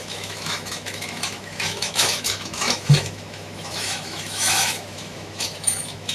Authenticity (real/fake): fake